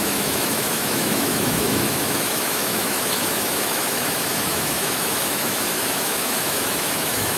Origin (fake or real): fake